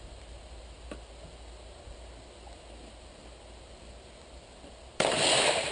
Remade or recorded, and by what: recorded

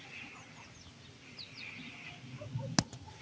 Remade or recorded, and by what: recorded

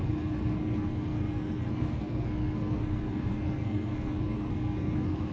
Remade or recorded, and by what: remade, codec, SNAC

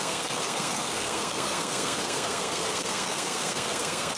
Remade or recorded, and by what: remade, codec, SNAC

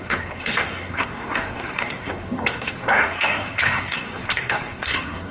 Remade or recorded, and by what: remade, codec, SNAC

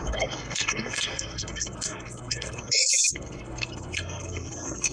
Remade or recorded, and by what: remade, codec, SNAC